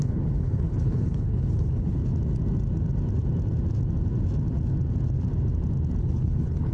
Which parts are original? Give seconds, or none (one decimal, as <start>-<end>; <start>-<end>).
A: 2.0-6.0